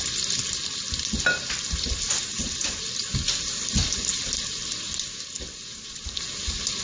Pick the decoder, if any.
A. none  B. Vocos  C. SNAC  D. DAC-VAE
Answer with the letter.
A